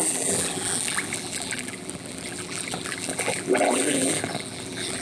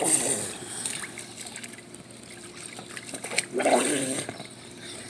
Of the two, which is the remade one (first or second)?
first